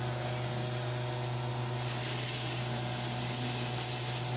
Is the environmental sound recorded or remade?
recorded